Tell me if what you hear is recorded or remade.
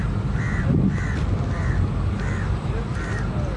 recorded